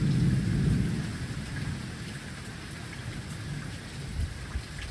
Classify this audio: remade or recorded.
recorded